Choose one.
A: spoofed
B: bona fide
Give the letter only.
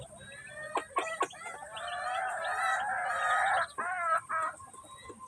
B